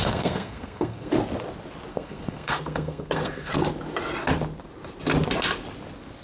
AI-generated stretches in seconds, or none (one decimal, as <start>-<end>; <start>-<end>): 0.0-1.1; 1.9-3.5